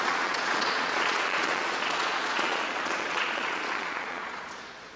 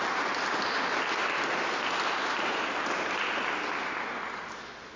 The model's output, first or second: first